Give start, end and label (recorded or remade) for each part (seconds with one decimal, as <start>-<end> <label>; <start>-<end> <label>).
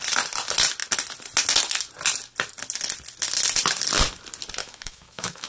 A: 0.0-4.6 recorded; 4.6-5.5 remade